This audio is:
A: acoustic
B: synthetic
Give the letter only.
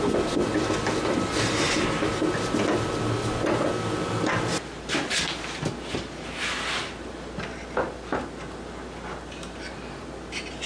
A